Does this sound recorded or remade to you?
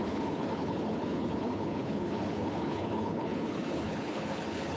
remade